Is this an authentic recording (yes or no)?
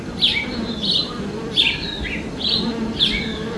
yes